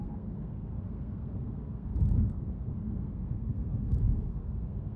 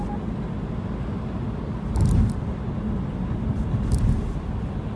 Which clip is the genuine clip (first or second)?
second